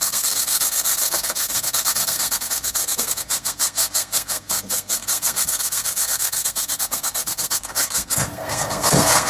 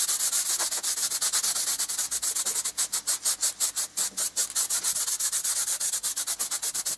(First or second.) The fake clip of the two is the first